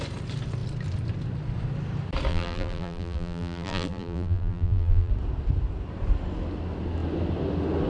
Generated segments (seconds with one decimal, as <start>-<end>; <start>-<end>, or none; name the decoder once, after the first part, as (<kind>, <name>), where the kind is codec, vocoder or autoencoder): 2.3-5.1 (vocoder, BigVGAN v2)